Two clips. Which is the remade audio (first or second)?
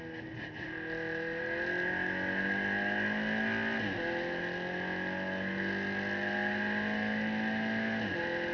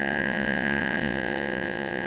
second